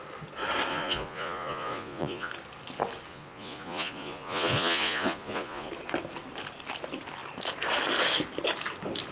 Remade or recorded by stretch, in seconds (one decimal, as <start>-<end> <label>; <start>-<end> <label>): 0.0-0.7 recorded; 0.7-2.3 remade; 2.3-3.1 recorded; 3.1-5.7 remade; 5.7-9.1 recorded